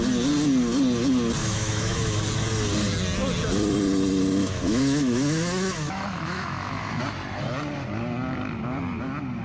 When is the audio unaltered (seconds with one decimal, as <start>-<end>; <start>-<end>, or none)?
0.0-1.4; 2.2-4.4; 7.0-9.4